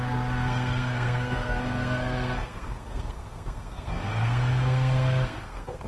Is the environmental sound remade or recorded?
remade